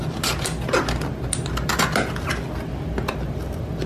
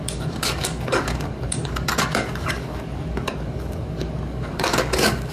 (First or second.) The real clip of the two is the first